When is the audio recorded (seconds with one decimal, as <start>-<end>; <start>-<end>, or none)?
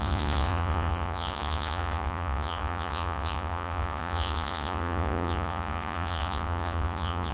none